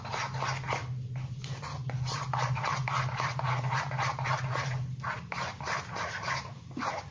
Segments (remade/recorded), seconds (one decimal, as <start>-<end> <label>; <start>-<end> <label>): 0.0-7.1 recorded